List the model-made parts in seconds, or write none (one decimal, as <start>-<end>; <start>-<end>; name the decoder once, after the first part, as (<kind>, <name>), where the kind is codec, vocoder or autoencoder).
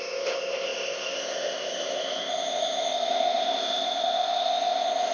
0.0-5.1 (codec, ZipCodec)